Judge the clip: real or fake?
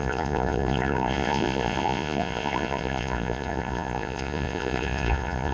fake